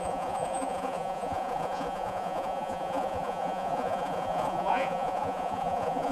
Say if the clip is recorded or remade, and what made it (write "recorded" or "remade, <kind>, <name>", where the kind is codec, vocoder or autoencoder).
remade, vocoder, Vocos